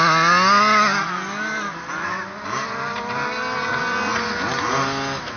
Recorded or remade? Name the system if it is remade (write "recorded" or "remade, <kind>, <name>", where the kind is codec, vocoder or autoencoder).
recorded